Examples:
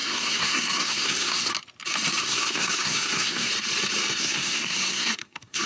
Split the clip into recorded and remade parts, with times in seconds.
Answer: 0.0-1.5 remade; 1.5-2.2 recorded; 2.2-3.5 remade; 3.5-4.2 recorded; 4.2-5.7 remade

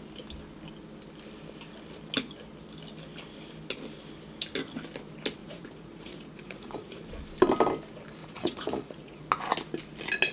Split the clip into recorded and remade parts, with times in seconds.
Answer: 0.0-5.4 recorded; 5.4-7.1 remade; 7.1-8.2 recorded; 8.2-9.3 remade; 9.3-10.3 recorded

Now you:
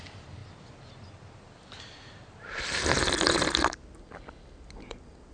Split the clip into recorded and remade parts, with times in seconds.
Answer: 0.0-5.3 recorded